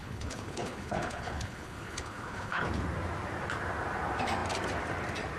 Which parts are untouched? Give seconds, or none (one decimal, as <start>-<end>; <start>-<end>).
2.6-5.4